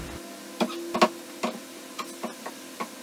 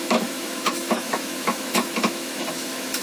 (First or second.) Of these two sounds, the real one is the first